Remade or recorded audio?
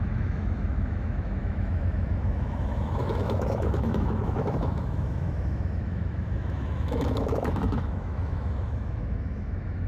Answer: remade